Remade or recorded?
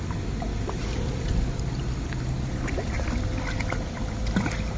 recorded